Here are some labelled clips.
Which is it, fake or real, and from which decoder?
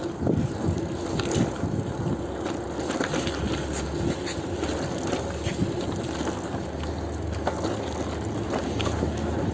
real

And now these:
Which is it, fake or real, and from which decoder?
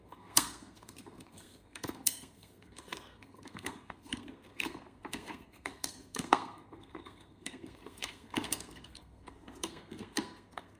fake, codec, SNAC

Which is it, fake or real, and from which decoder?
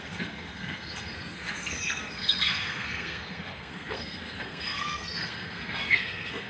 fake, codec, SNAC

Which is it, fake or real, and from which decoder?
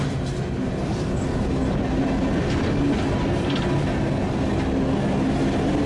real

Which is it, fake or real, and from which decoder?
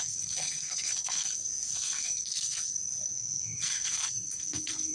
fake, codec, SNAC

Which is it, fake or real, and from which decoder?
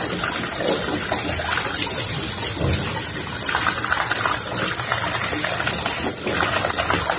real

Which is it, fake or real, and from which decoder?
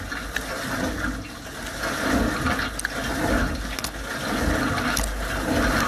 real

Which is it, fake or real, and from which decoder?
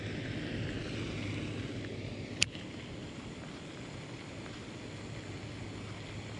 real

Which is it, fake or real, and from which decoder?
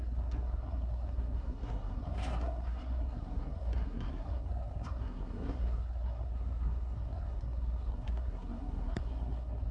fake, codec, SNAC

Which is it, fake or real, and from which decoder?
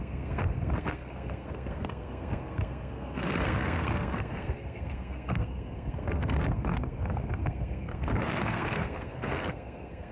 fake, codec, SNAC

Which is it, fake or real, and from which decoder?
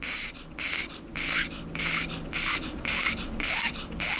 real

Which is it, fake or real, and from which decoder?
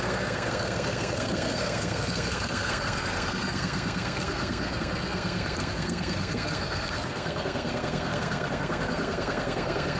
fake, codec, SNAC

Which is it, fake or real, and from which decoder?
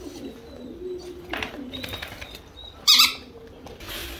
real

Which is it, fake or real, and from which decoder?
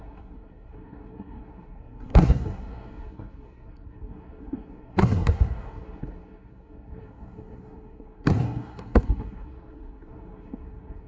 fake, codec, SNAC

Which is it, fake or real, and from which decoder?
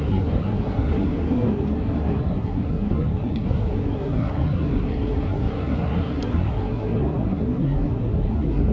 fake, codec, SNAC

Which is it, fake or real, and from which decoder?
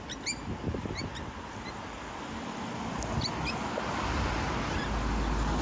real